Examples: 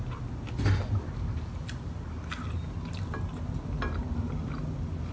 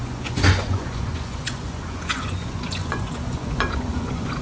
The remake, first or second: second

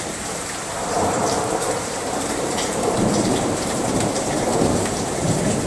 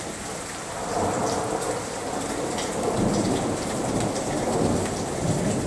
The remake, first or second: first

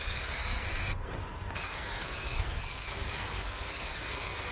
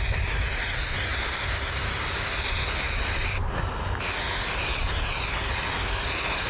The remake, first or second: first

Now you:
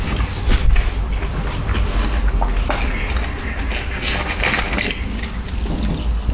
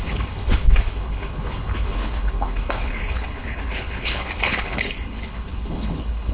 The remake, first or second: second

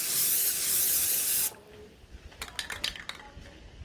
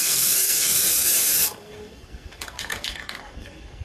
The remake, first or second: second